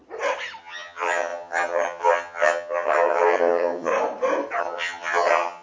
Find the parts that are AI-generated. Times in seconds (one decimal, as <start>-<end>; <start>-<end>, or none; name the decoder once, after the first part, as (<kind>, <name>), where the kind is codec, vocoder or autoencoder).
0.6-3.9 (vocoder, HiFi-GAN); 4.6-5.6